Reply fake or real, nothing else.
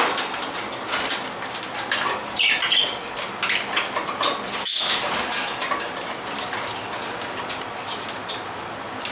real